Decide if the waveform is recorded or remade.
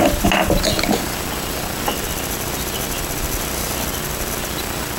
recorded